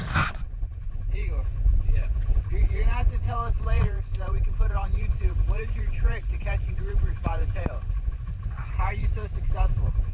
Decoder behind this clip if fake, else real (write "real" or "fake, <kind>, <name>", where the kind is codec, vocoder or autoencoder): fake, vocoder, Vocos